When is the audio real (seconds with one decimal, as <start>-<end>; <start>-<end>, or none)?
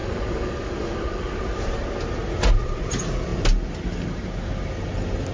1.4-5.3